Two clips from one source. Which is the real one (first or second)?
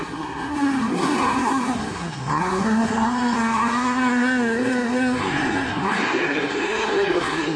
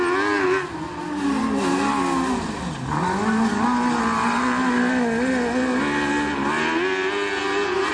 second